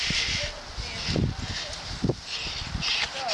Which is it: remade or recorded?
recorded